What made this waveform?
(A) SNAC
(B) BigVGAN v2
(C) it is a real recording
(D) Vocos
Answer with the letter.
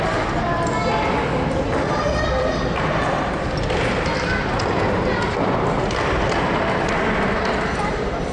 C